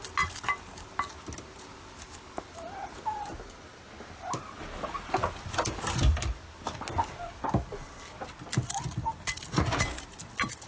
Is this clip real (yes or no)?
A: yes